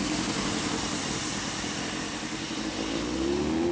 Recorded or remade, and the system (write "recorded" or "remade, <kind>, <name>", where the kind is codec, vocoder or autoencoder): recorded